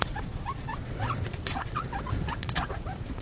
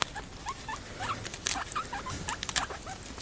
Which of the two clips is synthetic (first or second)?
first